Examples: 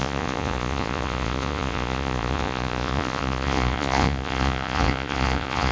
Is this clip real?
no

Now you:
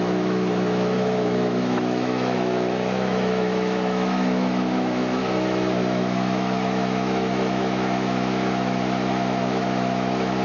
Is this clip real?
no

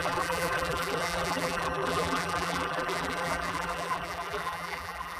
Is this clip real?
no